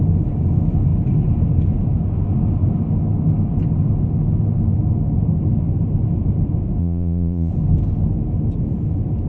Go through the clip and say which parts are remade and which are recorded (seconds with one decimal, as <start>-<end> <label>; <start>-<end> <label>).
0.0-6.8 recorded; 6.8-7.5 remade; 7.5-9.3 recorded